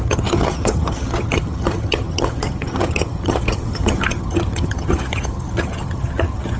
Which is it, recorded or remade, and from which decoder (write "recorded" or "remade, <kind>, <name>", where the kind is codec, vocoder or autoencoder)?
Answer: remade, vocoder, HiFi-GAN